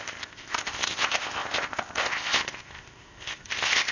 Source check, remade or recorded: remade